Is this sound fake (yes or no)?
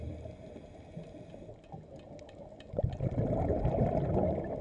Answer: no